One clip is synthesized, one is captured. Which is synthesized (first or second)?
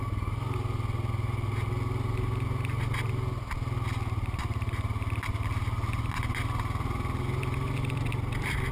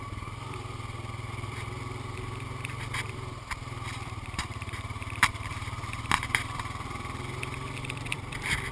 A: second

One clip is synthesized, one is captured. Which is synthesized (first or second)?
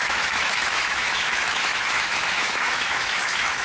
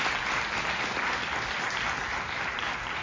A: first